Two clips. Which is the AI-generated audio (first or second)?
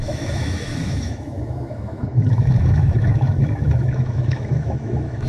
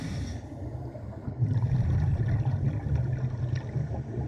first